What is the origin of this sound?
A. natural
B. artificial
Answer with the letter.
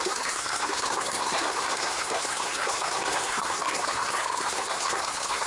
B